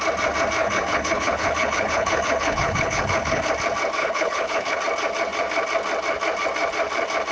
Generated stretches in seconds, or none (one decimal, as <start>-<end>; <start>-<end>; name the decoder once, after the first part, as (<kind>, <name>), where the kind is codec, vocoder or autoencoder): 0.6-3.5 (codec, HILCodec); 4.0-4.8